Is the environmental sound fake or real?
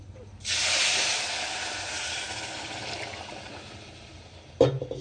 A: real